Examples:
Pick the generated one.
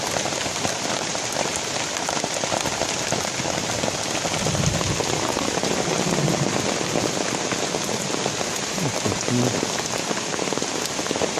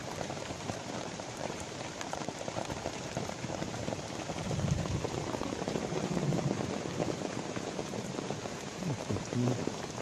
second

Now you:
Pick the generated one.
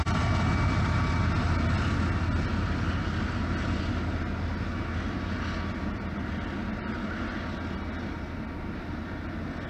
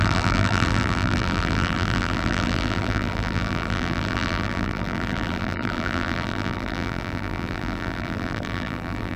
second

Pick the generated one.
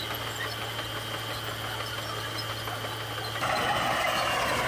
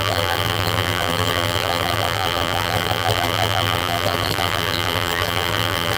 second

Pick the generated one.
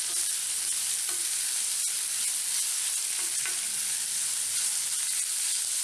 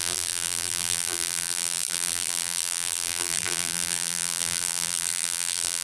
second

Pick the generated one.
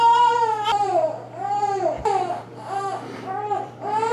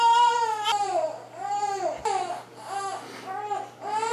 first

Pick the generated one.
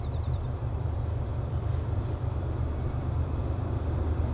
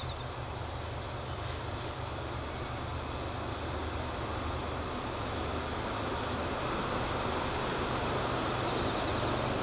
first